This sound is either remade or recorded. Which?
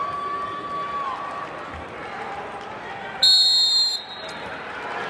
recorded